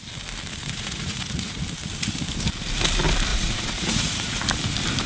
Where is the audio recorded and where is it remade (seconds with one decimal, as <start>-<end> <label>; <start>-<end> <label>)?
0.0-0.6 recorded; 0.6-1.6 remade; 1.6-3.3 recorded; 3.3-4.4 remade; 4.4-5.1 recorded